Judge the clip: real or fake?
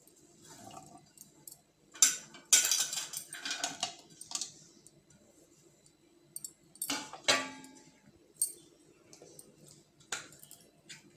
real